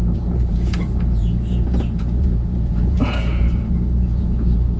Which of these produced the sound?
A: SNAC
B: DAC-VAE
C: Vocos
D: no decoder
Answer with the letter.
C